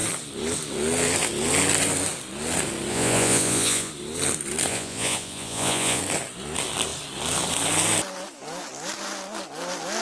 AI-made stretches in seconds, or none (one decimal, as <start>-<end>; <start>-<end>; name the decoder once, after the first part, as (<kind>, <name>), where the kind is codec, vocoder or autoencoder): 2.9-3.9 (vocoder, Vocos); 4.7-6.0